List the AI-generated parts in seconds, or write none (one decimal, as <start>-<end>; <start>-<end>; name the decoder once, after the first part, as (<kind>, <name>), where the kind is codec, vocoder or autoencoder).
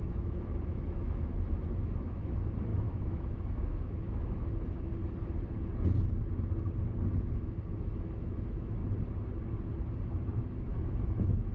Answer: 0.0-4.9 (autoencoder, DAC-VAE); 7.2-8.8; 10.4-11.5